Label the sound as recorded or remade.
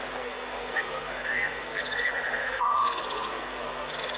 remade